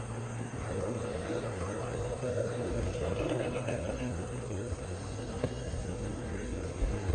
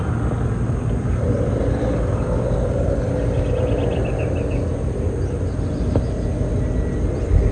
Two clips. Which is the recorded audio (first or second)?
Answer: second